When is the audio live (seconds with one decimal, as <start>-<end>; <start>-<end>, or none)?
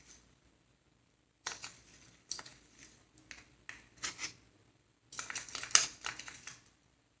0.0-7.2